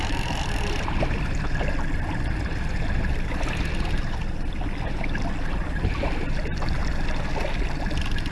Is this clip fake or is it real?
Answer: real